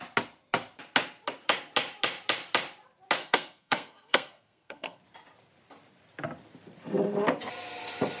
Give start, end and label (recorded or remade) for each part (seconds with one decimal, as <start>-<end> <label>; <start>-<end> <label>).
0.0-3.2 recorded; 3.2-5.0 remade; 5.0-8.2 recorded